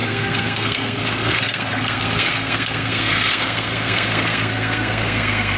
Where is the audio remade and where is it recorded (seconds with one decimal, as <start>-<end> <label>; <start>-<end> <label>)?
0.0-5.6 remade

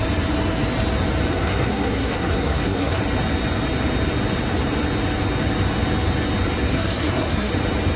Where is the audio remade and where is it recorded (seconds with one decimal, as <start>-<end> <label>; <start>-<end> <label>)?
0.0-1.3 recorded; 1.3-3.0 remade; 3.0-6.7 recorded; 6.7-7.5 remade; 7.5-8.0 recorded

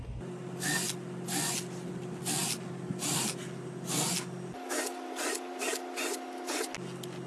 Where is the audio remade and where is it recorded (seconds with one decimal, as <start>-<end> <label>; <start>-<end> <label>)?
0.0-7.3 recorded